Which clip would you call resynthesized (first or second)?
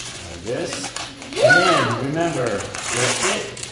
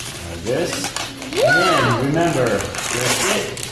first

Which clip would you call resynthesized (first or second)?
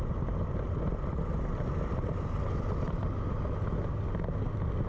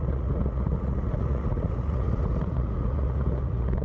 second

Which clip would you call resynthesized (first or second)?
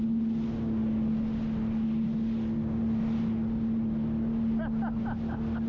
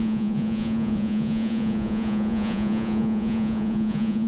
second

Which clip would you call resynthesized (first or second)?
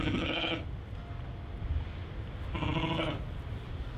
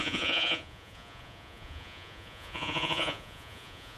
second